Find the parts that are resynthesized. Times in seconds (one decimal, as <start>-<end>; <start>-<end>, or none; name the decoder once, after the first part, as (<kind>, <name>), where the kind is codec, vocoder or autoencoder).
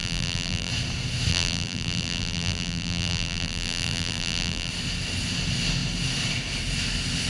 0.0-0.7 (vocoder, BigVGAN v2); 1.3-4.7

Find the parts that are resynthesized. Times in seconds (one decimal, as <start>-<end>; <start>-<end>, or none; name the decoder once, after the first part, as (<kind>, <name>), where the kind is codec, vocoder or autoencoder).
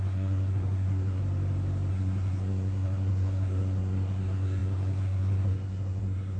0.0-1.2 (codec, SNAC); 1.9-6.4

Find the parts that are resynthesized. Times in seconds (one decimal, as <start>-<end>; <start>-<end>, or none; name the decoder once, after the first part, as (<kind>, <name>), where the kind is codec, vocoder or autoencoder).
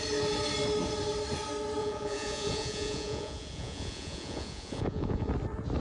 1.8-5.3 (vocoder, Vocos)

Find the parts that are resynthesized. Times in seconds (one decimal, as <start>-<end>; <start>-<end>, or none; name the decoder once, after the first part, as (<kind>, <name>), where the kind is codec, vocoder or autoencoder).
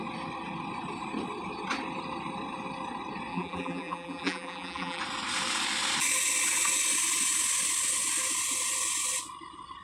3.3-5.0 (vocoder, BigVGAN v2)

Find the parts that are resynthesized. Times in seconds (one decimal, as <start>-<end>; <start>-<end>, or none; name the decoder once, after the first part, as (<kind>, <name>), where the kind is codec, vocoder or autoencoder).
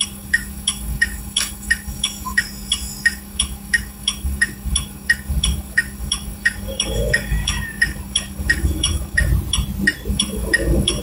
0.0-9.3 (codec, DAC); 10.1-11.0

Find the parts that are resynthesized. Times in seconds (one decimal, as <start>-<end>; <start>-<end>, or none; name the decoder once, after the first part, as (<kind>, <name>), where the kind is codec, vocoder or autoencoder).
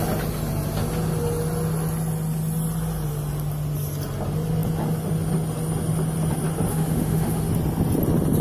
6.7-7.5 (autoencoder, DAC-VAE)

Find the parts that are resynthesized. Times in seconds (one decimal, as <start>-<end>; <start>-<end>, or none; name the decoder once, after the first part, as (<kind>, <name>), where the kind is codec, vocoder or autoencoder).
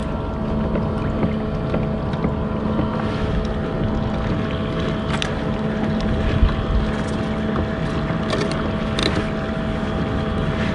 none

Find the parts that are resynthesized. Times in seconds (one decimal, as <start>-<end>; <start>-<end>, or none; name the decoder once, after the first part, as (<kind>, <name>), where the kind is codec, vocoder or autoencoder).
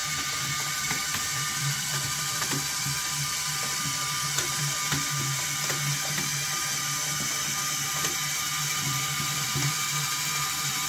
0.0-4.8 (vocoder, BigVGAN v2); 8.7-9.9